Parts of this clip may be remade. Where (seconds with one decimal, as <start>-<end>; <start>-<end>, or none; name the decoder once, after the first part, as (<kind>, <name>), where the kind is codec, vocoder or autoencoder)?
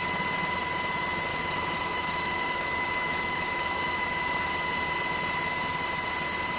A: 1.3-4.5 (autoencoder, DAC-VAE)